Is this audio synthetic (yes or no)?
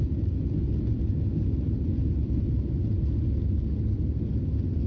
no